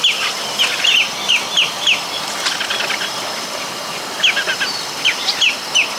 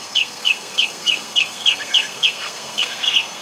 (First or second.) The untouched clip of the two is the first